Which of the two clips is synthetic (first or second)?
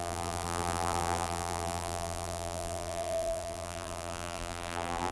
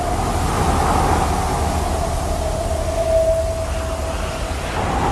first